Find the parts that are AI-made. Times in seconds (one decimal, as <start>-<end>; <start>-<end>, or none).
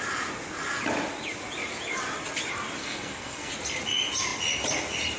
2.8-3.5